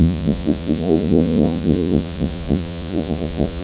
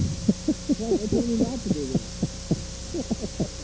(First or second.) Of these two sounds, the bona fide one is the second